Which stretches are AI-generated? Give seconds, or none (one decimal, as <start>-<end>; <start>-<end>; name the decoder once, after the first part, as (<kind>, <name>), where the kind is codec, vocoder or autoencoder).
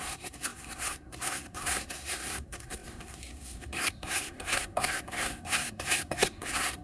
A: 0.0-6.8 (codec, SNAC)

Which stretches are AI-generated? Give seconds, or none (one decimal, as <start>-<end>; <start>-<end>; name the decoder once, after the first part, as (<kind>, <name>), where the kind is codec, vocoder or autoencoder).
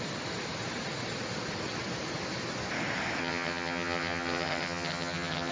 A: 3.2-5.5 (vocoder, HiFi-GAN)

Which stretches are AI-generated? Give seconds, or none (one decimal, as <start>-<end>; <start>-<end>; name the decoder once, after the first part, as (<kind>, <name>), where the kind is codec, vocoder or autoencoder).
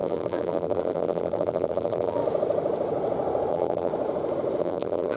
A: 0.0-2.2 (vocoder, BigVGAN v2); 3.5-3.9; 4.6-5.2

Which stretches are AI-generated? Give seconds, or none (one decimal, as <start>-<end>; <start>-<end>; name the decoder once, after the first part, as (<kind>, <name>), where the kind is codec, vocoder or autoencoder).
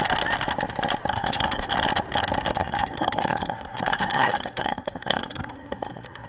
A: 1.1-1.7 (codec, SNAC); 2.5-6.3